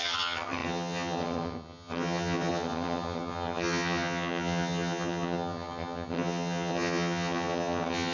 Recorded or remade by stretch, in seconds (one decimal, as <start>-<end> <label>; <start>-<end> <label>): 0.0-8.1 remade